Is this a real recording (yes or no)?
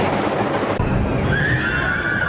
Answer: yes